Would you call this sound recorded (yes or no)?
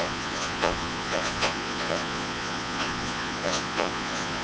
no